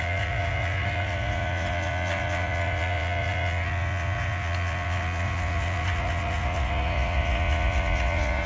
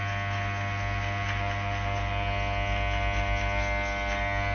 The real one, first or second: second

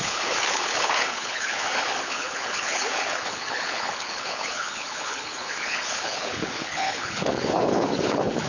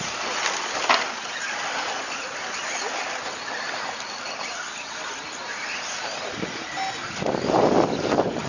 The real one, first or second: second